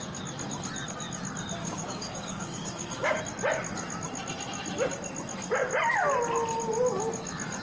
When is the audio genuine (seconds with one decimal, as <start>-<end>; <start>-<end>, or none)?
0.0-1.6; 3.2-7.6